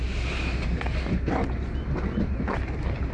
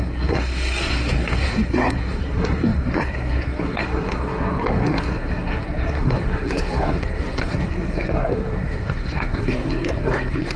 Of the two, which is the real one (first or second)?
first